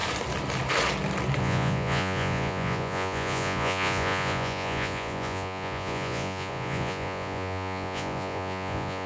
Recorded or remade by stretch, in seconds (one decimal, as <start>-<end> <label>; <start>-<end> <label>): 0.0-1.4 recorded; 1.4-9.1 remade